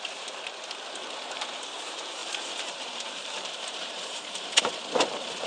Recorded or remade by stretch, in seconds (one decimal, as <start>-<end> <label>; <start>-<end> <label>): 0.0-5.5 remade